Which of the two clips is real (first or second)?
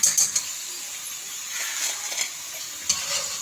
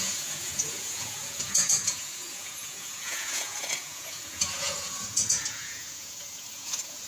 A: first